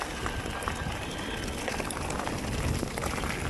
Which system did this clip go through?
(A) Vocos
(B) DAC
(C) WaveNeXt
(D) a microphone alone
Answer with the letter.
D